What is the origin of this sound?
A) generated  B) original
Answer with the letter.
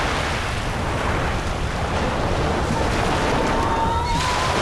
B